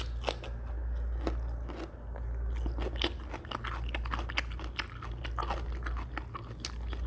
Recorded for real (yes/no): yes